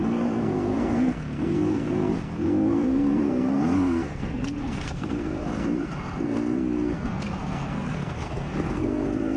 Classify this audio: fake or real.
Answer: fake